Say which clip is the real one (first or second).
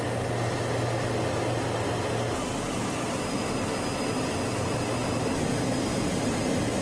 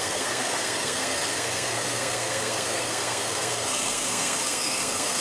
first